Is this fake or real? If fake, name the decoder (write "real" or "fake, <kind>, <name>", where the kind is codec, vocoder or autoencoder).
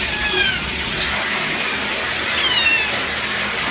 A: real